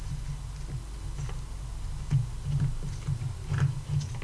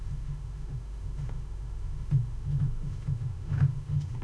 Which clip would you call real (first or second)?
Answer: first